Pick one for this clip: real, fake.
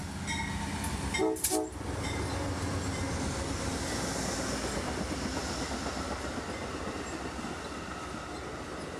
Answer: real